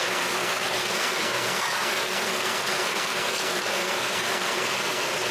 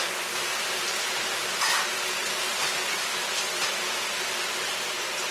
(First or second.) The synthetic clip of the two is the first